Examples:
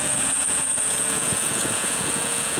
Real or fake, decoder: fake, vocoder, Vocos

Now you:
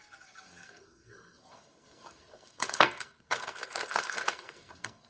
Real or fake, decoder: fake, codec, SNAC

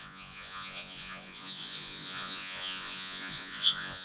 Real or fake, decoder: fake, vocoder, Vocos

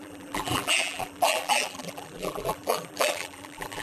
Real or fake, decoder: fake, vocoder, BigVGAN v2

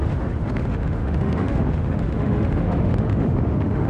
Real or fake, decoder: fake, autoencoder, DAC-VAE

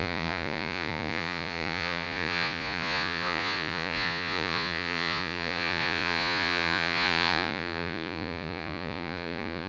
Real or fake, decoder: fake, vocoder, Vocos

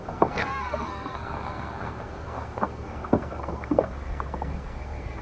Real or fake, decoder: fake, codec, SNAC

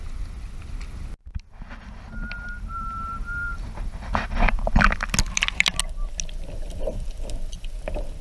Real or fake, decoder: real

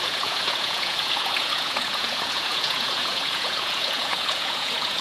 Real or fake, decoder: fake, vocoder, Vocos